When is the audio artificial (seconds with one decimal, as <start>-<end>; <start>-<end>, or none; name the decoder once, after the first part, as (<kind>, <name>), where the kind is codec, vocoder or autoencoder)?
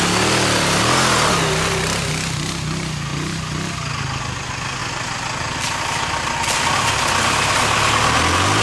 none